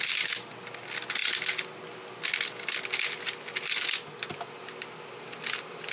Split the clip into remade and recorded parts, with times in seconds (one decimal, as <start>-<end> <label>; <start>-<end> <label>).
0.0-5.9 recorded